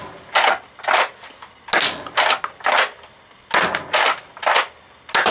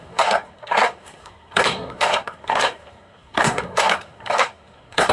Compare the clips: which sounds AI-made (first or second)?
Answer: second